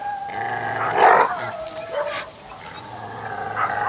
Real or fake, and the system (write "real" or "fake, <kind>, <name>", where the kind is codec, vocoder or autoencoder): real